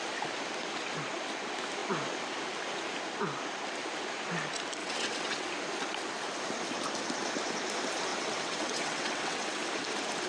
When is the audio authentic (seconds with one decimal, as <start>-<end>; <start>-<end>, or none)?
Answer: 0.0-4.8; 5.5-8.1; 9.6-10.3